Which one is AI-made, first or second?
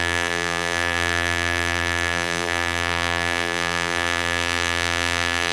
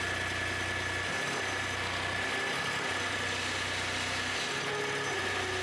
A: first